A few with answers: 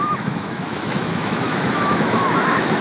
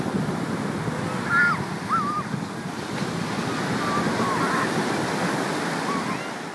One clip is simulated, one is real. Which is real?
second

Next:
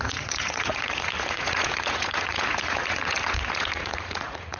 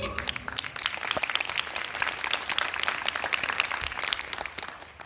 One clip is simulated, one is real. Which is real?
second